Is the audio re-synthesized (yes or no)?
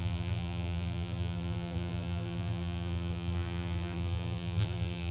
yes